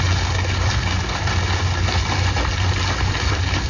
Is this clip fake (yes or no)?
no